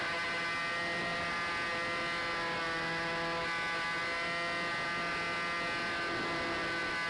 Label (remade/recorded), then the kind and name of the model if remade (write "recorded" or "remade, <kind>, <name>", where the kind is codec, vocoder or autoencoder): recorded